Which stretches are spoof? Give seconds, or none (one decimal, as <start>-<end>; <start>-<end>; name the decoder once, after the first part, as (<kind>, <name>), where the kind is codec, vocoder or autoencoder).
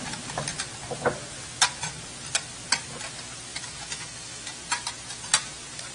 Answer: 3.5-4.5 (autoencoder, DAC-VAE)